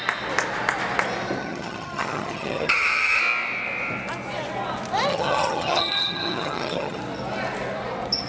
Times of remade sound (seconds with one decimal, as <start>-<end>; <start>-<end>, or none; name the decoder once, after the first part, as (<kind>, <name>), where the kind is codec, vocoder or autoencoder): 1.4-3.2 (vocoder, HiFi-GAN); 5.1-7.0